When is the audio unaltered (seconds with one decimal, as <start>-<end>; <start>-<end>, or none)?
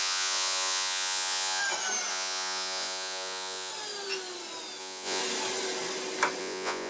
1.6-2.1; 3.7-4.8; 5.2-6.4